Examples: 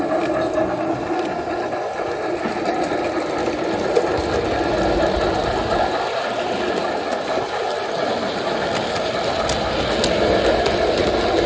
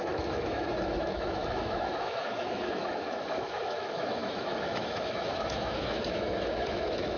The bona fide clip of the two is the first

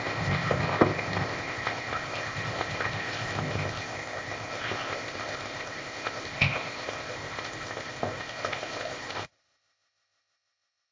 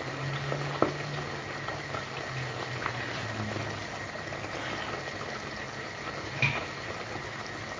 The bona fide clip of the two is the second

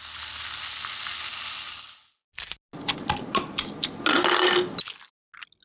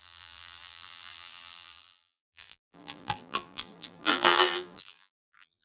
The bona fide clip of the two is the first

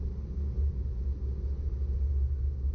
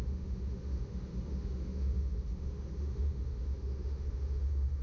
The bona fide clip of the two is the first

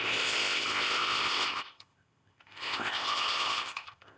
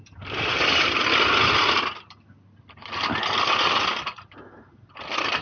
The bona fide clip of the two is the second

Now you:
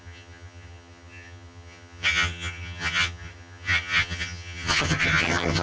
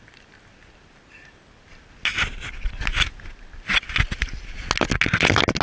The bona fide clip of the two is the second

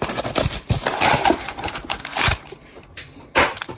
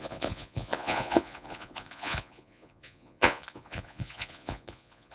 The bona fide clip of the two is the first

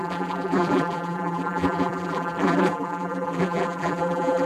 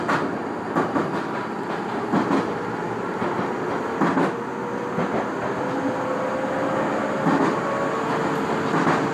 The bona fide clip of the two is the second